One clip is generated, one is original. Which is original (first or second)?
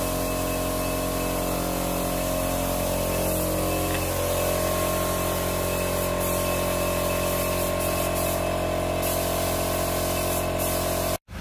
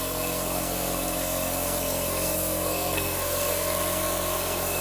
first